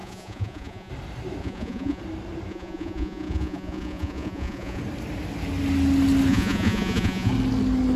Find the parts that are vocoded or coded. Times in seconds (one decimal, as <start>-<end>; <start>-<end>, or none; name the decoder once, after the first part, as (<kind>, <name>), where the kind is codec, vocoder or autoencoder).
0.0-0.9 (vocoder, Vocos); 1.4-2.0; 2.5-4.8; 6.3-7.3